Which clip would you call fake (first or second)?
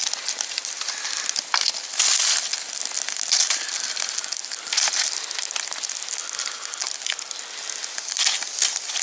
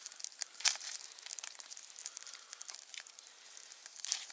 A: second